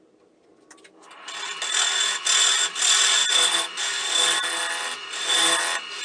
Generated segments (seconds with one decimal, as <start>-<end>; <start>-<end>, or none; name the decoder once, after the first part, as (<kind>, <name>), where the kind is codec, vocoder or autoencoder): none